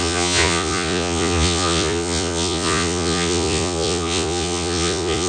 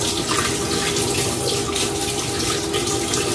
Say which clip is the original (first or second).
second